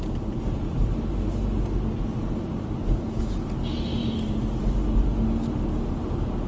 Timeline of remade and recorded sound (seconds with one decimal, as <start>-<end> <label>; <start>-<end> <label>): 0.0-4.0 recorded; 4.0-4.6 remade; 4.6-6.5 recorded